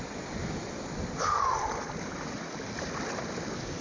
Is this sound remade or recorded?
recorded